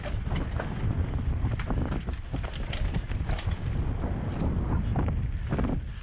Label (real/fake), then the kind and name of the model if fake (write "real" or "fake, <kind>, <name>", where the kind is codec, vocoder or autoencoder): real